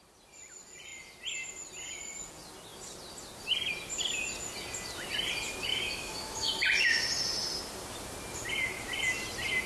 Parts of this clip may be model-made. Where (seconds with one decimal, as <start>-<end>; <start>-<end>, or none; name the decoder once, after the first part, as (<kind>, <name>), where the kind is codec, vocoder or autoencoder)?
5.7-6.5 (autoencoder, DAC-VAE)